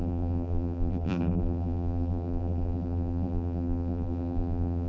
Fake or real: fake